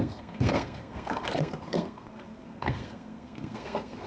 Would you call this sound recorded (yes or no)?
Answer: no